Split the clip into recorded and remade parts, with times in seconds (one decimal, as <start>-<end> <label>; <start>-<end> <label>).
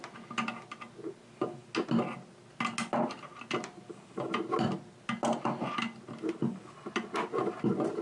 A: 0.0-8.0 recorded